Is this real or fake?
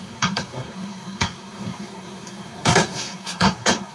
fake